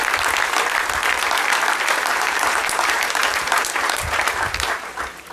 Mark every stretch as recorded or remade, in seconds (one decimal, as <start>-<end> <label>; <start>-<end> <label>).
0.0-2.1 recorded; 2.1-5.3 remade